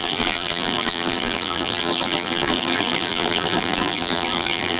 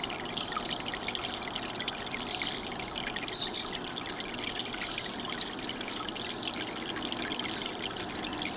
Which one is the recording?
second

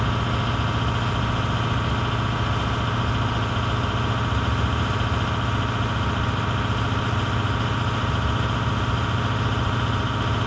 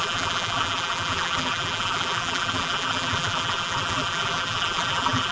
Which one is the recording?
first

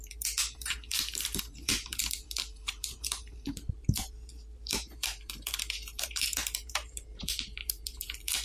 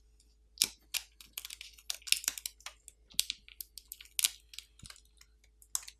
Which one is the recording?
second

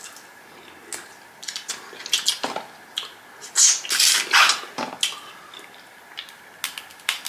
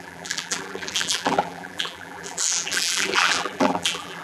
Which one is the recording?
first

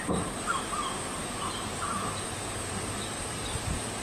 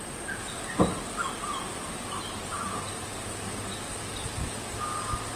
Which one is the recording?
second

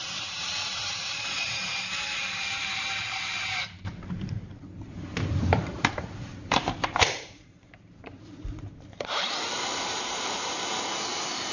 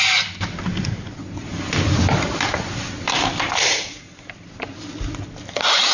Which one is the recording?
second